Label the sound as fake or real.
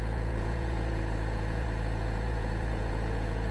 fake